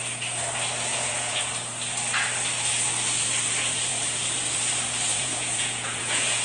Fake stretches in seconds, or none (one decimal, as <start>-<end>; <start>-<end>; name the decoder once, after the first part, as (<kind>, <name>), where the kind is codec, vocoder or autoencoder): 0.9-1.4 (vocoder, Vocos); 5.1-6.4